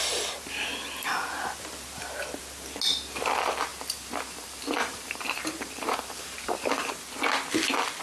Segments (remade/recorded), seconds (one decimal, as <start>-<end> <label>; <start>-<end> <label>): 0.0-3.7 recorded; 3.7-6.9 remade; 6.9-8.0 recorded